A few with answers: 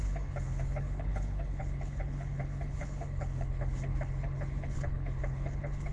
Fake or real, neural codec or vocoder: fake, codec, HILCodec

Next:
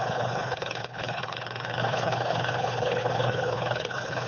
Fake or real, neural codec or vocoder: fake, codec, HILCodec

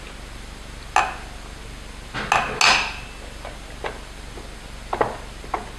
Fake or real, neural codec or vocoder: real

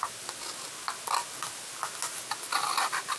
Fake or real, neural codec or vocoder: real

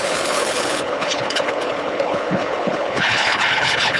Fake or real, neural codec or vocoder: fake, codec, HILCodec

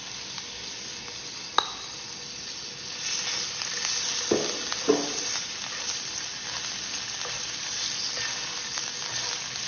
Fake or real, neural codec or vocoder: real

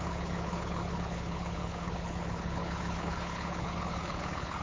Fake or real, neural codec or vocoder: fake, codec, HILCodec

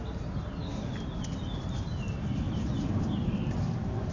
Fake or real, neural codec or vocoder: real